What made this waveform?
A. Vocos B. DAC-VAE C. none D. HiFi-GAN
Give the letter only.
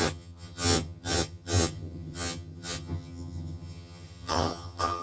D